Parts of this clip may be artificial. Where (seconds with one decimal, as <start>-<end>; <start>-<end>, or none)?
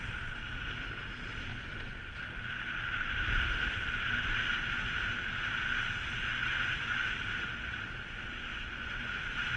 1.5-2.1; 6.4-7.0; 8.5-9.2